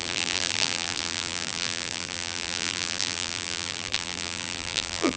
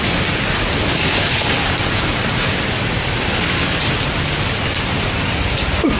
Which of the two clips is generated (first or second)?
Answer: first